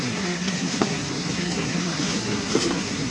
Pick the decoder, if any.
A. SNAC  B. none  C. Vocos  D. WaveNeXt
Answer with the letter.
A